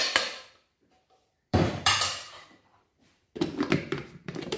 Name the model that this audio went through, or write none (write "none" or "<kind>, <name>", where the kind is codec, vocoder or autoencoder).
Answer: vocoder, BigVGAN v2